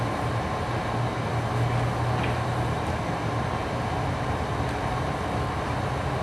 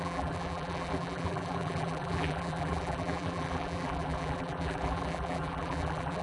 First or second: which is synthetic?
second